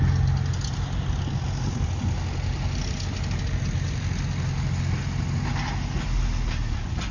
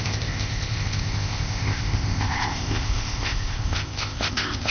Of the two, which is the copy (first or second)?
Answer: second